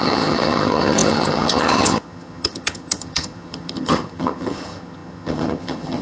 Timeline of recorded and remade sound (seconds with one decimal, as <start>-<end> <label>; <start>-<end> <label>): 0.0-6.0 remade